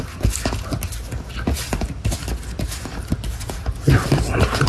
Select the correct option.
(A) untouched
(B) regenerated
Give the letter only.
A